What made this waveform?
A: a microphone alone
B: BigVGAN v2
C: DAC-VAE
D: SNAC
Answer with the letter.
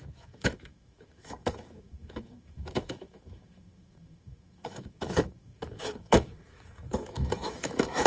C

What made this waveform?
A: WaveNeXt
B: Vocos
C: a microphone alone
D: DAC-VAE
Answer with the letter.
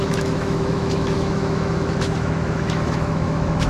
D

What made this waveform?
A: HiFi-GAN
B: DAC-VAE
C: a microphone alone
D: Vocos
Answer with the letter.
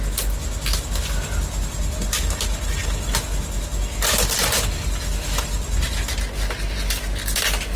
C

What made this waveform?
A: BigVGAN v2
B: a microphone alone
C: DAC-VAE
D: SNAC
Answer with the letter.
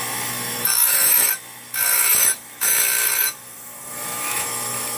C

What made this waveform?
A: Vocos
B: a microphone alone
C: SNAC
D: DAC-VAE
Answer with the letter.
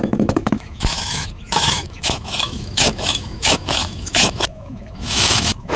D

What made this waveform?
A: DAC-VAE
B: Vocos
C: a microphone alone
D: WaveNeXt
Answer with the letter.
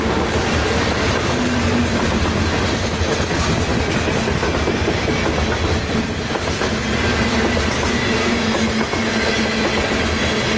C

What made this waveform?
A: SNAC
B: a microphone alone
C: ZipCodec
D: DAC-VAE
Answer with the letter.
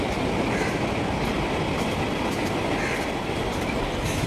B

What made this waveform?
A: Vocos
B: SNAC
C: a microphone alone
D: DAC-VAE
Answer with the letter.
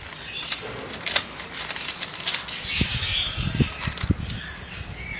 C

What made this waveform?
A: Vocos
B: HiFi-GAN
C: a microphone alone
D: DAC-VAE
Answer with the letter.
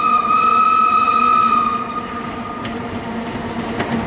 C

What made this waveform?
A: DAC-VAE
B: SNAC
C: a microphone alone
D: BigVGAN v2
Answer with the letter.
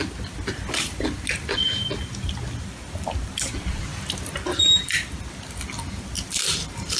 C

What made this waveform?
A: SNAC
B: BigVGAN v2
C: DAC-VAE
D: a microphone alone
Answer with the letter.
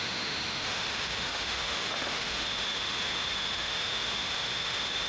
C